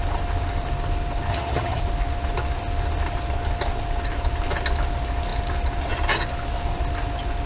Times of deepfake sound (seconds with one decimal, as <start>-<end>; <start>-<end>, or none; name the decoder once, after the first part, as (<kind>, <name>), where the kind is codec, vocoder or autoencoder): 1.3-1.8 (vocoder, HiFi-GAN)